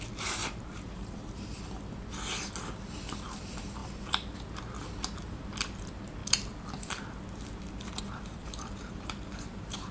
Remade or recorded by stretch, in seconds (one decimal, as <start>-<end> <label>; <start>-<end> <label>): 0.0-0.4 recorded; 0.4-1.6 remade; 1.6-8.4 recorded; 8.4-9.9 remade